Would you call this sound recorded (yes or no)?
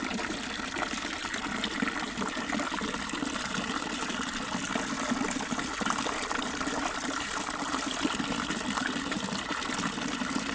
yes